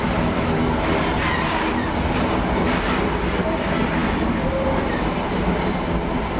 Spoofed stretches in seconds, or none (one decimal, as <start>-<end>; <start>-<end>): none

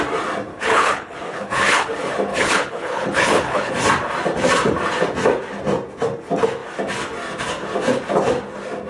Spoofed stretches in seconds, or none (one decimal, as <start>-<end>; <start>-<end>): 0.5-1.9; 2.3-3.7

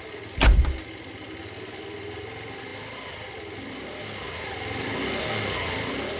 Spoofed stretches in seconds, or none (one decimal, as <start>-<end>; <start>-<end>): none

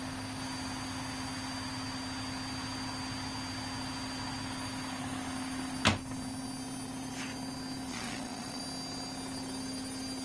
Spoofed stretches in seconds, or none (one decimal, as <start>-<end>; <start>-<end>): 7.9-8.6

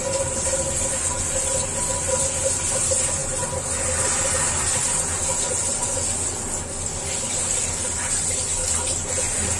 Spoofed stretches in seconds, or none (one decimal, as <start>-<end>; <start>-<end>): none